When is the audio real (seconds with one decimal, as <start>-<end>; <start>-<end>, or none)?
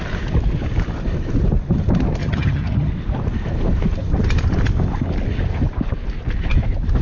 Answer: 0.0-2.2; 2.9-7.0